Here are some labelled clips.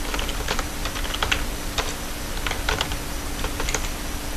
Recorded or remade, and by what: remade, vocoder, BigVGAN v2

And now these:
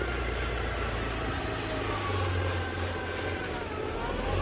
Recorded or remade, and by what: recorded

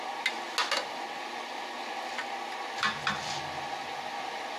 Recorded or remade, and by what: recorded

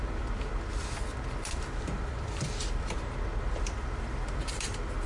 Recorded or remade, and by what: remade, vocoder, BigVGAN v2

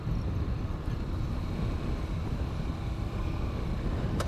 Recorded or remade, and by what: recorded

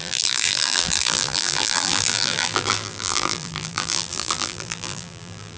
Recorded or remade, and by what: remade, vocoder, BigVGAN v2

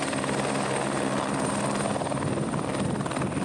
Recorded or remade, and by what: recorded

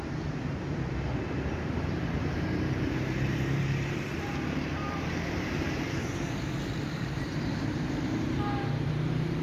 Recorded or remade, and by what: remade, vocoder, BigVGAN v2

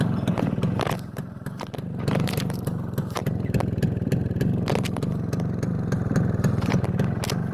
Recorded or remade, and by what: remade, vocoder, BigVGAN v2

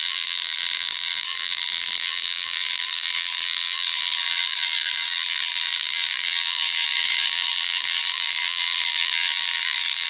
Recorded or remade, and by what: remade, vocoder, BigVGAN v2